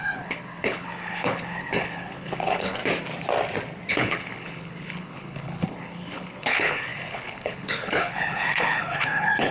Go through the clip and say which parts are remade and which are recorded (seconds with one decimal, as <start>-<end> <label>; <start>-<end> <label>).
0.0-2.8 remade; 2.8-3.9 recorded; 3.9-9.5 remade